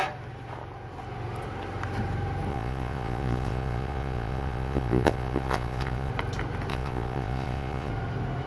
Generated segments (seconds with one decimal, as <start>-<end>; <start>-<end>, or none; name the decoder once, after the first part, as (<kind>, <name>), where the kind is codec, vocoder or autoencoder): 2.5-6.1 (vocoder, Vocos); 6.7-7.9